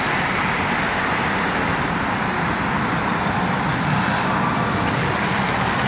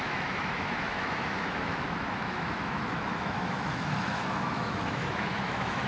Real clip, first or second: first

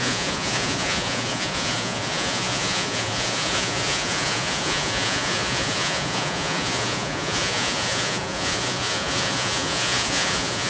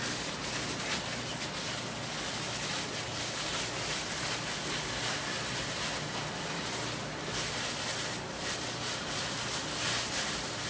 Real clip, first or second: second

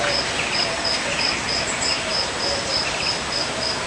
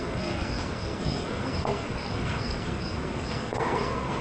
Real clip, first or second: first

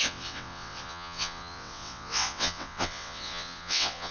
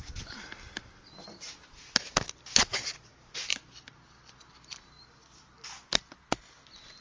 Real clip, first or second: second